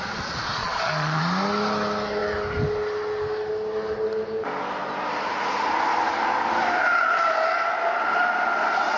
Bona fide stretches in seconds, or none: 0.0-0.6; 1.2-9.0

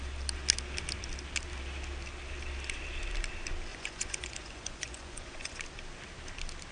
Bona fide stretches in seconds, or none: 0.0-3.7; 5.6-6.7